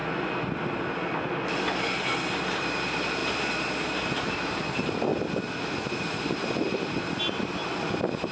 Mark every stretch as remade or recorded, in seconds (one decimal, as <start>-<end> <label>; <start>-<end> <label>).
0.0-1.9 recorded; 1.9-5.1 remade; 5.1-5.6 recorded; 5.6-7.6 remade; 7.6-8.3 recorded